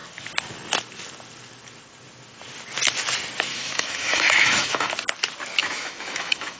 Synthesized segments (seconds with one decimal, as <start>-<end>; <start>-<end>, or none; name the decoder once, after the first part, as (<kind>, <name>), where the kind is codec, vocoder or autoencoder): 3.5-4.9 (autoencoder, DAC-VAE); 5.6-6.6